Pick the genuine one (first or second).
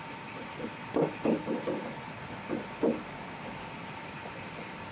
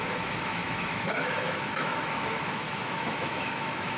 first